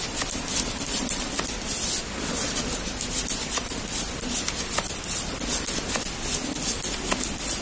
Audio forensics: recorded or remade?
recorded